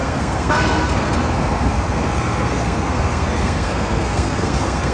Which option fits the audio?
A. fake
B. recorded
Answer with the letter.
A